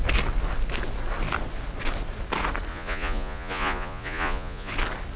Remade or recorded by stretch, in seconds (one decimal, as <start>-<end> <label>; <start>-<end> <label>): 0.0-2.7 recorded; 2.7-4.7 remade; 4.7-5.2 recorded